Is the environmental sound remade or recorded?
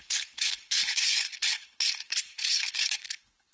remade